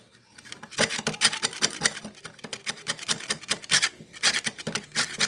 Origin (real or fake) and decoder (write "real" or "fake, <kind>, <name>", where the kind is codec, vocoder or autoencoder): real